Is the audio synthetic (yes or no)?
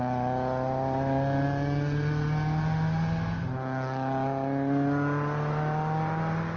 no